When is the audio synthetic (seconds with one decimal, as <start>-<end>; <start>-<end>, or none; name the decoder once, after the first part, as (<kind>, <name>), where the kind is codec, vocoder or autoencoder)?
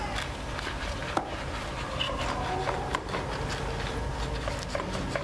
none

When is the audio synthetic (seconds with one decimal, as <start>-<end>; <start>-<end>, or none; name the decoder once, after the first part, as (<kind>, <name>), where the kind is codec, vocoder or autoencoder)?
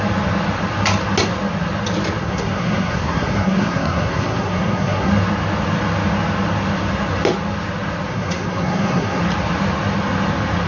2.2-5.1 (codec, SNAC); 8.1-9.2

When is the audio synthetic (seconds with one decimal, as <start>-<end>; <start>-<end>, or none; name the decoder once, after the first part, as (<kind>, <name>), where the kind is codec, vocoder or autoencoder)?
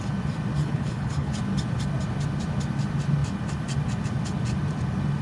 0.6-1.3 (codec, HILCodec)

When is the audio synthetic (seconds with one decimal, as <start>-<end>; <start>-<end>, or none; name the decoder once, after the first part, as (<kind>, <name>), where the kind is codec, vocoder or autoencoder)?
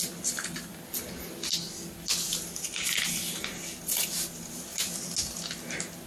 none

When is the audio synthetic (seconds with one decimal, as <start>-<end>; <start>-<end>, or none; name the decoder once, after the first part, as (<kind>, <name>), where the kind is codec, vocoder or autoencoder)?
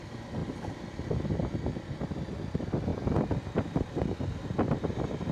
none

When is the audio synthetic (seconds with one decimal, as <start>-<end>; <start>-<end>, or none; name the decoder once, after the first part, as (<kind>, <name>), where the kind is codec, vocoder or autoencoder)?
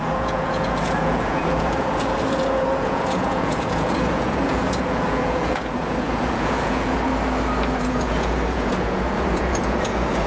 0.0-7.1 (vocoder, Vocos); 7.8-10.3